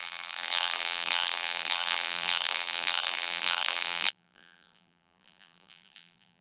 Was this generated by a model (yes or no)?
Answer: yes